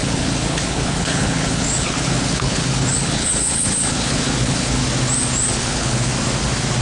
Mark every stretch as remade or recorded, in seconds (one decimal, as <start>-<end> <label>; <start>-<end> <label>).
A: 0.0-4.8 remade; 4.8-5.5 recorded; 5.5-6.1 remade; 6.1-6.8 recorded